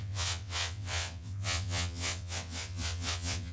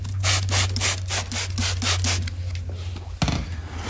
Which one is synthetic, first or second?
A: first